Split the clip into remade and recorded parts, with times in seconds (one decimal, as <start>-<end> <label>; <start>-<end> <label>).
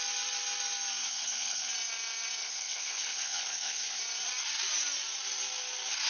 0.0-1.0 recorded; 1.0-1.7 remade; 1.7-2.4 recorded; 2.4-4.0 remade; 4.0-6.1 recorded